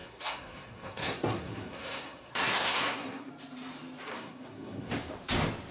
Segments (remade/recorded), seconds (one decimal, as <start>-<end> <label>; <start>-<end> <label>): 0.0-3.3 remade; 3.3-4.1 recorded; 4.1-4.9 remade; 4.9-5.7 recorded